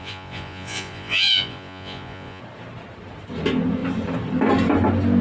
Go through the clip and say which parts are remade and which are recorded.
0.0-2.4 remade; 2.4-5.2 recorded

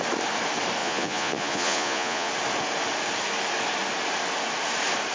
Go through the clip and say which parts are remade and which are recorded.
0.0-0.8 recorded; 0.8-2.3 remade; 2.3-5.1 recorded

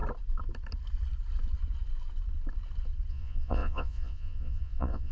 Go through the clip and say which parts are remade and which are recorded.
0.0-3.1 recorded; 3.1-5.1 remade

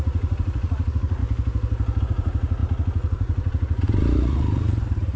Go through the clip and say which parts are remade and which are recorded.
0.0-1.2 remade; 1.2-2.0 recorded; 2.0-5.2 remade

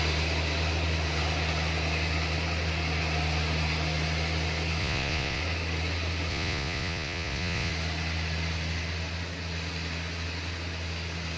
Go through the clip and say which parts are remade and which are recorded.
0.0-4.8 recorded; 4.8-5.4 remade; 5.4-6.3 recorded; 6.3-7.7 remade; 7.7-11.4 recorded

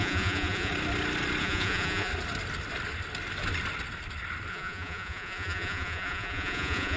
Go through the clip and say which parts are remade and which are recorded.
0.0-0.7 remade; 0.7-1.4 recorded; 1.4-2.1 remade; 2.1-4.5 recorded; 4.5-7.0 remade

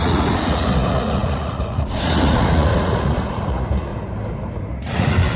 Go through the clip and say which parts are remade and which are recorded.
0.0-3.9 remade; 3.9-4.6 recorded; 4.6-5.4 remade